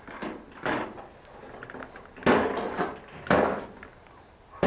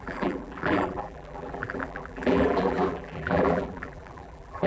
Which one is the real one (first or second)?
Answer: first